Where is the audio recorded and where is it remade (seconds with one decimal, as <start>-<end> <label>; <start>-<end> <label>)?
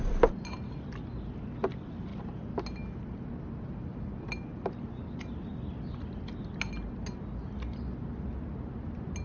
0.0-9.2 recorded